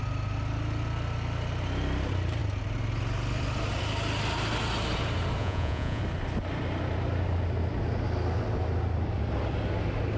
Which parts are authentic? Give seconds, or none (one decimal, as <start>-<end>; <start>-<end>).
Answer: 0.0-5.4; 6.0-10.2

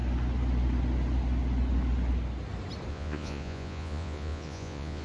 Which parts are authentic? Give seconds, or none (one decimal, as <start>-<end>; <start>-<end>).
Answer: 0.0-2.9

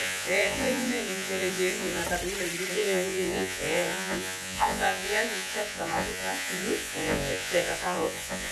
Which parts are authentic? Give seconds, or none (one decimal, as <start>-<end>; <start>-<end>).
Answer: 2.0-2.7

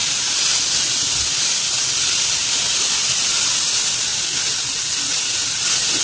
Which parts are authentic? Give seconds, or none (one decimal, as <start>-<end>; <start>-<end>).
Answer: 0.0-6.0

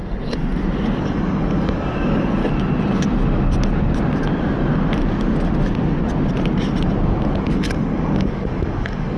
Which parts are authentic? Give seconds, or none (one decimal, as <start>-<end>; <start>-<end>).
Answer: 0.0-1.0; 2.4-7.4

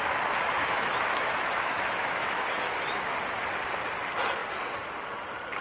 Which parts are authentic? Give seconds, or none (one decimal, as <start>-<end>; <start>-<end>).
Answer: 0.0-0.6; 3.1-5.6

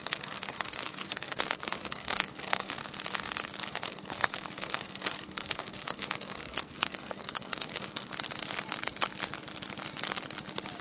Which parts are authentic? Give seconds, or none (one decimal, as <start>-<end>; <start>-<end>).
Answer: 2.8-3.7; 8.1-10.8